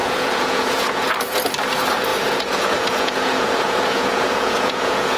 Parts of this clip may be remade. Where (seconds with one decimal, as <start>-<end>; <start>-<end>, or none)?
0.0-1.1; 2.1-5.2